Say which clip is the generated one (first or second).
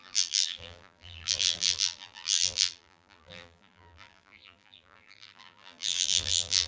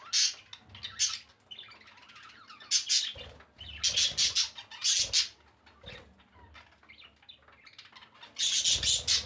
first